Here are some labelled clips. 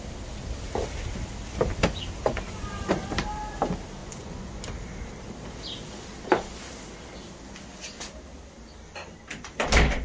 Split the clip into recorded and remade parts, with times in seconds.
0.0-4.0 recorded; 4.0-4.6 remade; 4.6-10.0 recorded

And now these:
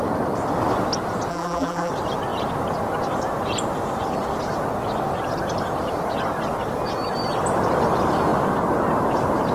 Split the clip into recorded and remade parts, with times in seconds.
0.0-1.3 recorded; 1.3-1.9 remade; 1.9-9.5 recorded

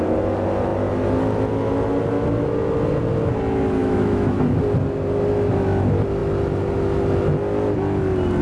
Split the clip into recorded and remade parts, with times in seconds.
0.0-3.8 recorded; 3.8-4.4 remade; 4.4-8.4 recorded

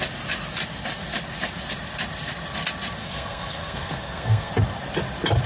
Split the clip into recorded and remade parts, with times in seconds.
0.0-3.0 recorded; 3.0-4.5 remade; 4.5-5.5 recorded

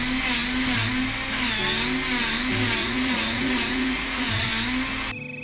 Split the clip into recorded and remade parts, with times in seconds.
0.0-2.8 recorded; 2.8-4.5 remade; 4.5-5.4 recorded

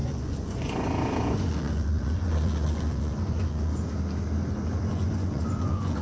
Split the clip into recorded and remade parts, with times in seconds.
0.0-3.7 remade; 3.7-4.8 recorded; 4.8-6.0 remade